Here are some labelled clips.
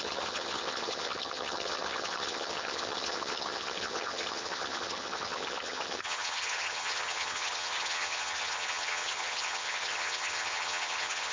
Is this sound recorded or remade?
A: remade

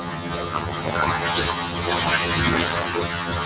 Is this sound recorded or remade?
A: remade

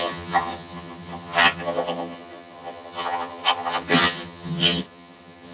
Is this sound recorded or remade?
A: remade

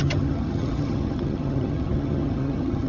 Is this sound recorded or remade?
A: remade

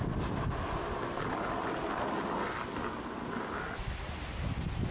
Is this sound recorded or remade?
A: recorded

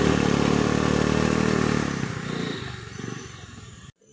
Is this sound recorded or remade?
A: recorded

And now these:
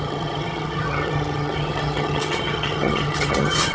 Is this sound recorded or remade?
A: remade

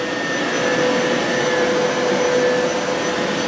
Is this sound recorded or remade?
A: recorded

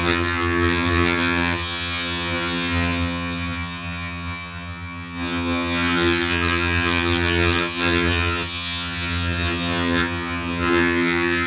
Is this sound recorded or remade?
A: remade